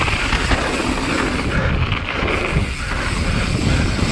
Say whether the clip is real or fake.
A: real